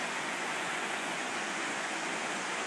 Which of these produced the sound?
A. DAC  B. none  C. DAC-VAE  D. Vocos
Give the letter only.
D